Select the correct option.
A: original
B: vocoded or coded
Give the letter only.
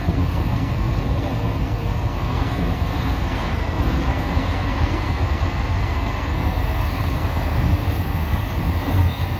B